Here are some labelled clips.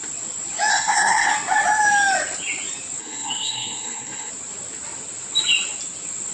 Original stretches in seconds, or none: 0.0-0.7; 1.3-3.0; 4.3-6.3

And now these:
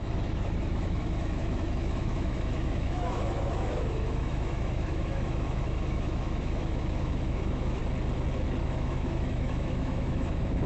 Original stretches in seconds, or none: 7.8-8.6

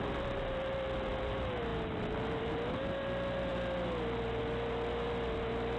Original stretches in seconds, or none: 0.0-5.8

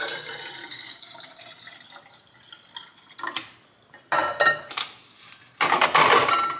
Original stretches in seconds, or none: 0.0-0.6; 1.4-6.6

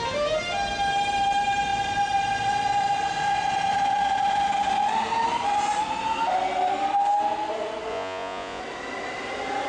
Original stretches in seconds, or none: 0.0-7.9; 8.6-9.7